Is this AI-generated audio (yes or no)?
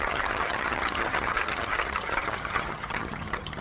yes